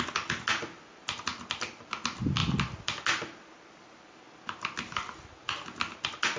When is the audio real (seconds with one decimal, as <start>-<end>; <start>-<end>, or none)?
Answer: 0.0-1.3; 1.9-6.4